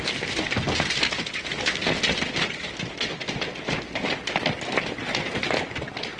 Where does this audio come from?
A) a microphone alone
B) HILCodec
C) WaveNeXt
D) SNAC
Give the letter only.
A